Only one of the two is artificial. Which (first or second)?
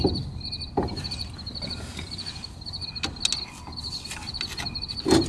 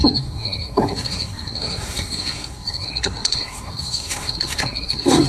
second